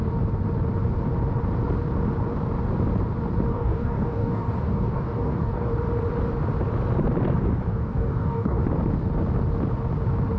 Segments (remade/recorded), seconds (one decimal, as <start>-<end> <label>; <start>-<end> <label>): 0.0-3.5 recorded; 3.5-5.7 remade; 5.7-7.7 recorded; 7.7-8.6 remade; 8.6-10.4 recorded